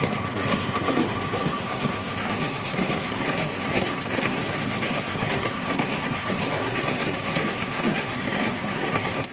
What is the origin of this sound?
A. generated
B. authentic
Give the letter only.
A